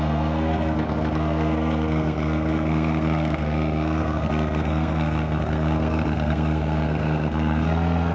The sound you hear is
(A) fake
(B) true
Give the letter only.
A